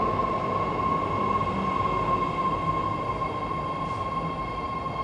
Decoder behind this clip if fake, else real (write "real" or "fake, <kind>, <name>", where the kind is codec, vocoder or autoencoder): real